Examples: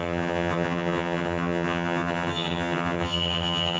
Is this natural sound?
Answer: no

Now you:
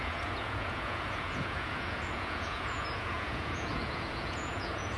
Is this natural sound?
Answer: no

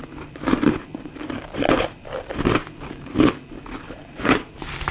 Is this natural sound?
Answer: no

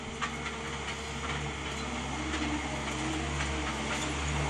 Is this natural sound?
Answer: yes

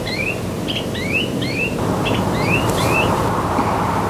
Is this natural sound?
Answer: no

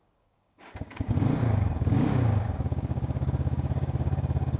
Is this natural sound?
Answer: no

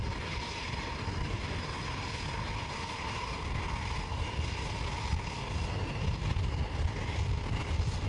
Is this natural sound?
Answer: yes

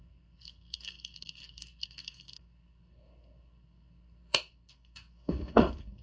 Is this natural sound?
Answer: no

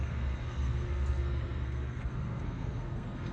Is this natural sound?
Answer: no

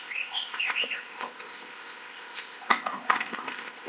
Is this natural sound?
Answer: no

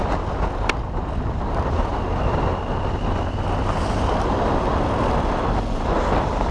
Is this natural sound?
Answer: yes